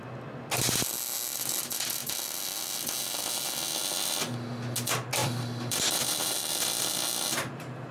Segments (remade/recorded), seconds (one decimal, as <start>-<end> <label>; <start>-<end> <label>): 0.0-5.2 recorded; 5.2-6.5 remade; 6.5-7.9 recorded